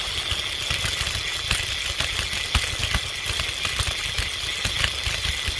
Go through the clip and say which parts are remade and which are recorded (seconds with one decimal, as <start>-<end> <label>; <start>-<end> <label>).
0.0-5.6 recorded